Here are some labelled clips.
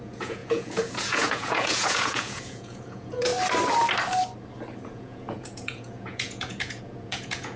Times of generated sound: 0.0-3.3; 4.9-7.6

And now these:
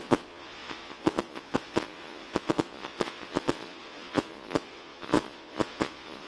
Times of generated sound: 0.0-6.3

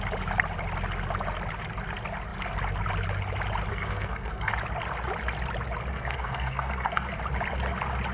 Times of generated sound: 3.7-4.5; 5.9-7.2